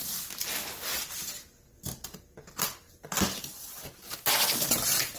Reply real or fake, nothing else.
real